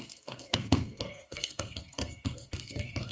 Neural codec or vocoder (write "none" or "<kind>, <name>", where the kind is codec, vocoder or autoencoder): codec, SNAC